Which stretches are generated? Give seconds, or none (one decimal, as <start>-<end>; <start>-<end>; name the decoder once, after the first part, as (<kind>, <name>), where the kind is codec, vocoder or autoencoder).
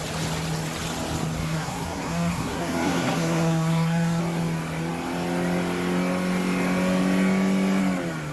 1.4-4.2 (codec, SNAC)